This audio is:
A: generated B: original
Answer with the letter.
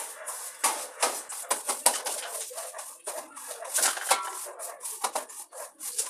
B